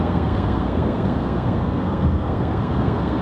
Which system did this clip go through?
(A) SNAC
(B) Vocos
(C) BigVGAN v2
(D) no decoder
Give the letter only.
A